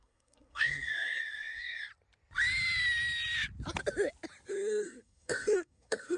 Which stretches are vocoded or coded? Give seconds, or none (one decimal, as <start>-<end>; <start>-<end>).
0.0-1.9; 4.5-6.2